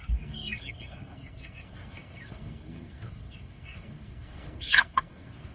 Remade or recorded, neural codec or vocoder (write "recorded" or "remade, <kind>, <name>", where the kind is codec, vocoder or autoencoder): remade, codec, SNAC